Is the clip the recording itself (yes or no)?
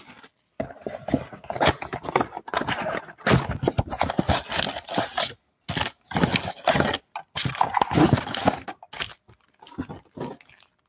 yes